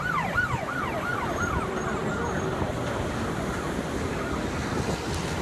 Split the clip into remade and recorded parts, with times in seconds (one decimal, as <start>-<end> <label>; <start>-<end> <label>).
0.0-1.1 recorded; 1.1-2.1 remade; 2.1-5.4 recorded